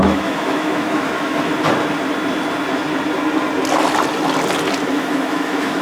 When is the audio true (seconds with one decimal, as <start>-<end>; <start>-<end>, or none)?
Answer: 1.5-4.9